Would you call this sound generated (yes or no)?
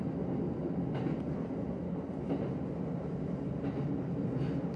no